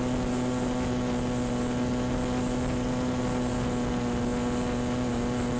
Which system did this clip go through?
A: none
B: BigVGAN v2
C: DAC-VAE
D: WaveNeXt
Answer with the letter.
A